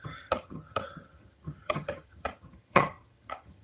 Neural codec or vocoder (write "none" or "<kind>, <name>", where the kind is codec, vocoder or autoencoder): vocoder, HiFi-GAN